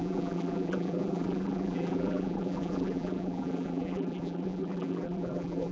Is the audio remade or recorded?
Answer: remade